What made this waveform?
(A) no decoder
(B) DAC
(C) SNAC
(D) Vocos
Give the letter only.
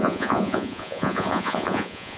D